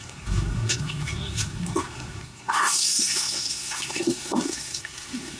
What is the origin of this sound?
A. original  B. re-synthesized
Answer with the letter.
B